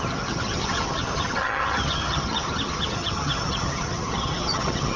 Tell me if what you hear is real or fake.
fake